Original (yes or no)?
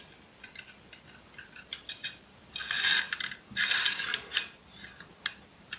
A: yes